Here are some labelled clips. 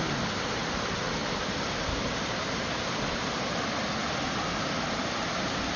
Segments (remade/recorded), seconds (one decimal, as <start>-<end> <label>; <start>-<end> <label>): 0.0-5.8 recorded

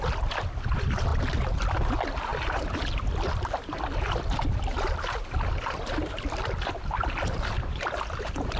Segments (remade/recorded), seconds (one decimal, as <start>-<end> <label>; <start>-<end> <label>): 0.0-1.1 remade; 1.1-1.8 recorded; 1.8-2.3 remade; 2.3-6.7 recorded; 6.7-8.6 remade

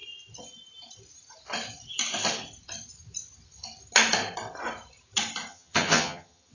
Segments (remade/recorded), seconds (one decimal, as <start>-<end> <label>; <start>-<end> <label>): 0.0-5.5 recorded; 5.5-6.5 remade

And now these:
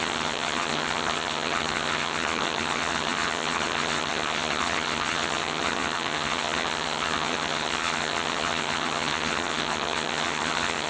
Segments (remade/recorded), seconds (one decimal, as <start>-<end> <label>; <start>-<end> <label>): 0.0-10.9 remade

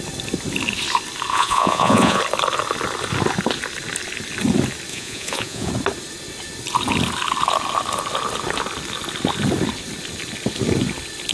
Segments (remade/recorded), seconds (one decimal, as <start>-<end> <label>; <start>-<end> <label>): 0.0-1.3 recorded; 1.3-2.2 remade; 2.2-4.9 recorded; 4.9-5.7 remade; 5.7-11.3 recorded